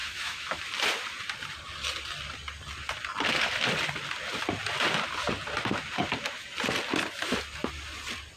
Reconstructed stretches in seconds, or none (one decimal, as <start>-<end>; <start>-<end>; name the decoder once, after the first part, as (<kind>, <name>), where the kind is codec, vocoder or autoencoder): 0.0-0.6 (autoencoder, DAC-VAE)